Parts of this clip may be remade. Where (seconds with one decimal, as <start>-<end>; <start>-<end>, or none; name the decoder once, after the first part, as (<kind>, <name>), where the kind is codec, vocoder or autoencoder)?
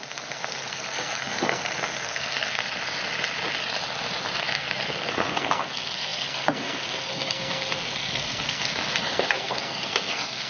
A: 0.0-2.6 (codec, SNAC); 4.4-10.5